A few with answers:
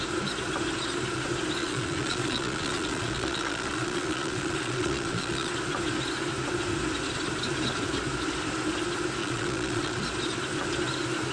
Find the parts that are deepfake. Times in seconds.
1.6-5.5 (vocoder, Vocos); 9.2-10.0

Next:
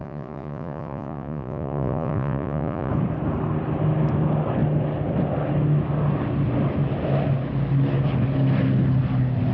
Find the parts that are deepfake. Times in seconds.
0.0-2.9 (vocoder, Vocos)

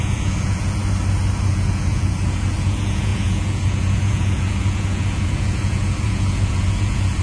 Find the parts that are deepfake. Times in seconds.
0.0-0.8 (vocoder, Vocos); 1.5-7.2